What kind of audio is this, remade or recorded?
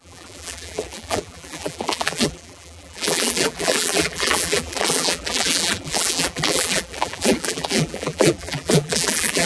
remade